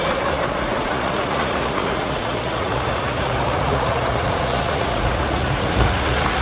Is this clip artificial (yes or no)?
yes